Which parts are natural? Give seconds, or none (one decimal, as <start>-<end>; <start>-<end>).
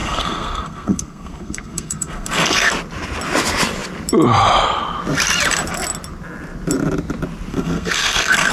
2.7-7.5